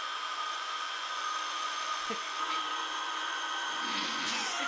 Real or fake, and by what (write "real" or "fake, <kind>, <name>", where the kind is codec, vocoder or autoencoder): fake, vocoder, Vocos